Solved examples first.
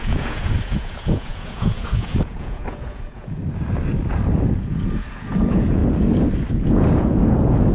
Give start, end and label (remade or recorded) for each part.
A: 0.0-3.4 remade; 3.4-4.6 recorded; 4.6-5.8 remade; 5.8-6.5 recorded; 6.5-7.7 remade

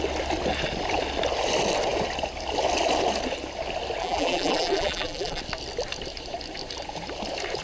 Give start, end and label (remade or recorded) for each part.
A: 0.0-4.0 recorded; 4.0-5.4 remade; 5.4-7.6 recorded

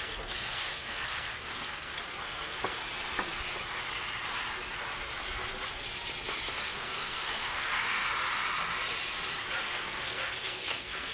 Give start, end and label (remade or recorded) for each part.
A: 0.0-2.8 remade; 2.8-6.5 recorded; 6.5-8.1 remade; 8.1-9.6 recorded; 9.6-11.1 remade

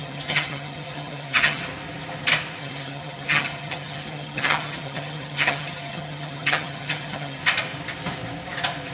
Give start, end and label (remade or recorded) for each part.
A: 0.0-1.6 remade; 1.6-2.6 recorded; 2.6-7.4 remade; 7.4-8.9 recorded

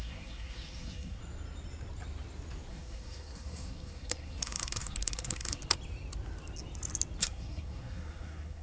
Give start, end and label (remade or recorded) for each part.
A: 0.0-1.2 remade; 1.2-2.7 recorded; 2.7-5.6 remade; 5.6-7.2 recorded; 7.2-8.6 remade